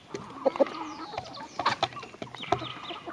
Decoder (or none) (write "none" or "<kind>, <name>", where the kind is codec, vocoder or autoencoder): none